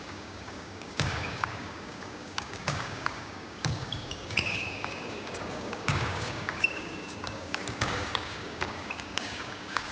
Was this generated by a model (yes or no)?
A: yes